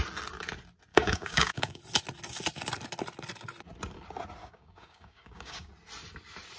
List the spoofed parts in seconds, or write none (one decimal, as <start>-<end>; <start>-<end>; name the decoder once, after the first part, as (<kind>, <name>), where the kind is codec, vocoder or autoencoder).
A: 0.9-1.8 (codec, DAC); 4.4-5.7

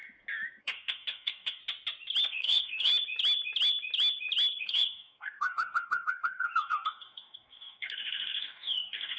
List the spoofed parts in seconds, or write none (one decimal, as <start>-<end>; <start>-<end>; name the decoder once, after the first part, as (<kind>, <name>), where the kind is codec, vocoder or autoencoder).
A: 0.6-1.6 (codec, DAC); 2.3-2.9; 4.6-9.2

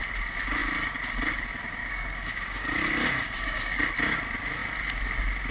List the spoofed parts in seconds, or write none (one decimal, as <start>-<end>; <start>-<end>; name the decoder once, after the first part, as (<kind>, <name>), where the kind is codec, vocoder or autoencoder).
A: 1.8-3.9 (codec, DAC)

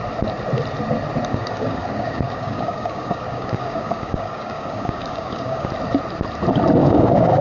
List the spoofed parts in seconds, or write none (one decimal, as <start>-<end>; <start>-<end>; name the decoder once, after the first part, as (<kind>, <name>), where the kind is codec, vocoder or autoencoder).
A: 1.3-5.7 (codec, DAC); 6.8-7.4

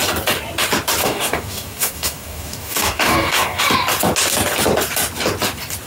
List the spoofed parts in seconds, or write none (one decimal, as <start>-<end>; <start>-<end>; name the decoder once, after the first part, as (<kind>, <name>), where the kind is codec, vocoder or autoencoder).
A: 1.0-3.6 (codec, DAC)

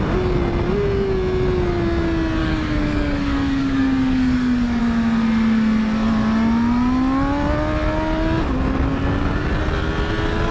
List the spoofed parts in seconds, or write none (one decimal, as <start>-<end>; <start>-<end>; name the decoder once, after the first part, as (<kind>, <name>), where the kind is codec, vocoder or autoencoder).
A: 2.4-4.8 (codec, DAC)

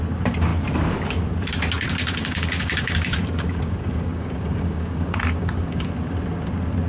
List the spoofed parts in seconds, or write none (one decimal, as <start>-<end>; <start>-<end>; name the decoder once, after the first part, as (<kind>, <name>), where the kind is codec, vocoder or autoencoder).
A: 2.0-5.9 (codec, DAC)